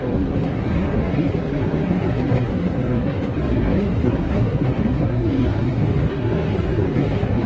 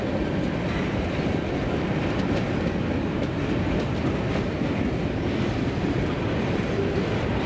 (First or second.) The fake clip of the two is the first